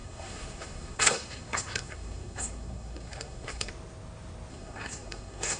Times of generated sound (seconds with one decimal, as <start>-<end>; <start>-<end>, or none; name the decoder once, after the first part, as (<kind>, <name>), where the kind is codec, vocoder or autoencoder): 0.0-3.7 (codec, SNAC); 4.5-5.6